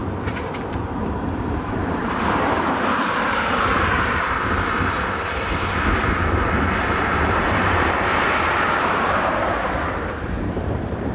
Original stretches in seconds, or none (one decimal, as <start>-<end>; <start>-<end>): 0.0-0.8